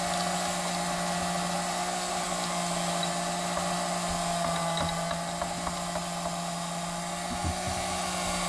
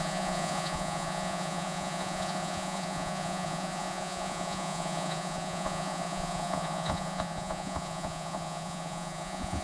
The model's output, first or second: second